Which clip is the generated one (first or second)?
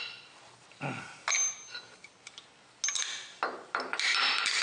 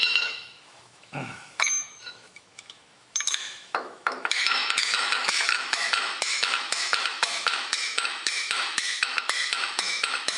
second